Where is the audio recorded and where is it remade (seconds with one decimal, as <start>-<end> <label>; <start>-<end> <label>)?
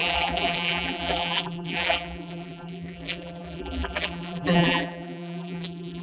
0.0-6.0 remade